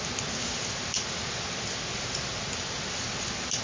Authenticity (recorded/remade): recorded